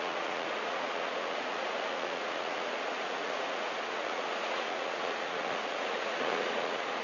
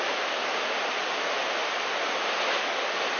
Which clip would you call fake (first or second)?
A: first